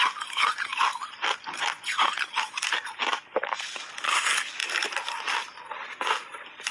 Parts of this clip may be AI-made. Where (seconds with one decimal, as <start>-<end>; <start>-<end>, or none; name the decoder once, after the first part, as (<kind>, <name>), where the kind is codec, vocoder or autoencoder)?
none